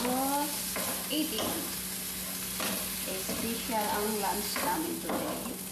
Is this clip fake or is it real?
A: real